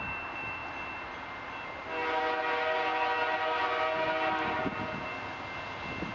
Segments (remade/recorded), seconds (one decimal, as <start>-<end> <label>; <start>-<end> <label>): 0.0-6.1 recorded